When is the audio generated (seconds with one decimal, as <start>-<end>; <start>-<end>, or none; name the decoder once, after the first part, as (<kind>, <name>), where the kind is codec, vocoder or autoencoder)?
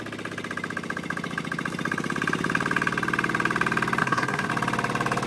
4.0-4.5 (codec, SNAC)